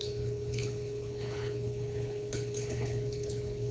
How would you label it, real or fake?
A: fake